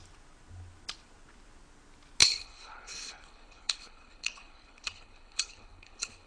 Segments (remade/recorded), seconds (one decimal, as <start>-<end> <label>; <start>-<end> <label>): 0.0-2.2 recorded; 2.2-6.3 remade